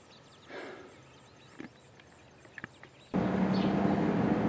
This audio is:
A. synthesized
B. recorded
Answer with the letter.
B